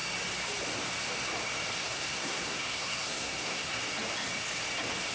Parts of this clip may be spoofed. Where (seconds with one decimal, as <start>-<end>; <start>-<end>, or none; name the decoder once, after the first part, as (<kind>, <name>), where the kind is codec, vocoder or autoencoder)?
1.8-3.8 (codec, SNAC)